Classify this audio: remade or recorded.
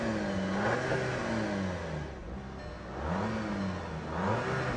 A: recorded